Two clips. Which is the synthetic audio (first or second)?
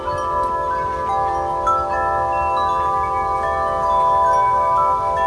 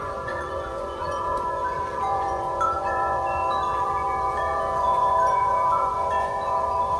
second